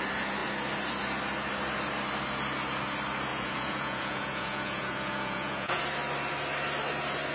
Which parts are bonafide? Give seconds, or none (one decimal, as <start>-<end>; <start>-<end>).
0.0-3.3; 5.8-7.3